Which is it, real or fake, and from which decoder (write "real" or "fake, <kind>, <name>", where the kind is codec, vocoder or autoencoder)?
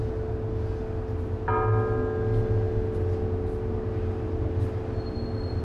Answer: real